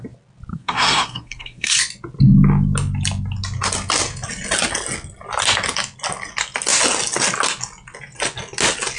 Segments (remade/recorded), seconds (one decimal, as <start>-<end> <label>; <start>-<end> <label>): 0.0-0.5 recorded; 0.5-1.8 remade; 1.8-9.0 recorded